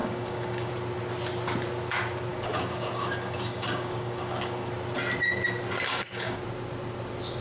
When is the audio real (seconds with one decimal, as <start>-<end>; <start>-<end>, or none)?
0.7-2.3; 4.7-5.9; 6.4-7.4